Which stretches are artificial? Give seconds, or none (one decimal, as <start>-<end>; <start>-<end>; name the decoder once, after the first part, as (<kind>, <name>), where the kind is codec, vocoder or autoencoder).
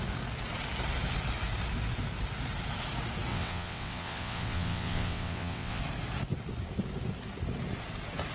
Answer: 3.3-5.8 (vocoder, WaveNeXt)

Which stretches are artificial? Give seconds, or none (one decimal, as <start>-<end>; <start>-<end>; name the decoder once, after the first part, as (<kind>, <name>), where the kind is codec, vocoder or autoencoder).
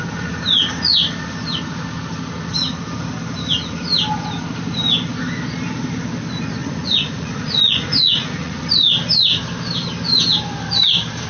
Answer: 6.6-8.6 (vocoder, Vocos)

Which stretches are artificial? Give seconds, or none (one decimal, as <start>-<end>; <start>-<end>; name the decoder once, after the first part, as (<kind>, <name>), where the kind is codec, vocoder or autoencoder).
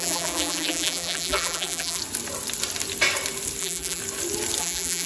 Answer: 0.0-2.0 (vocoder, BigVGAN v2); 3.6-4.0; 4.6-5.1